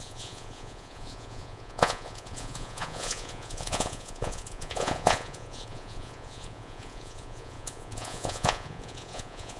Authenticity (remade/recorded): remade